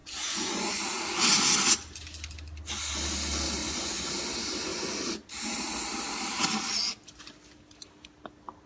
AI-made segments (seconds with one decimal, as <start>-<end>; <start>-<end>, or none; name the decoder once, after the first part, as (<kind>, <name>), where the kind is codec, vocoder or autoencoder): 0.0-0.8 (vocoder, Vocos); 3.6-4.3